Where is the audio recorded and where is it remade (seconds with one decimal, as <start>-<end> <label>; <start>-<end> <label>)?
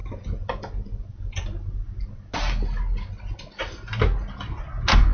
0.0-5.1 recorded